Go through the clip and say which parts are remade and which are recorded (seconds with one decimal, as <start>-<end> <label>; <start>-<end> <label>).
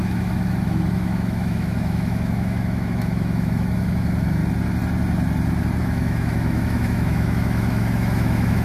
0.0-4.4 remade; 4.4-5.8 recorded; 5.8-8.6 remade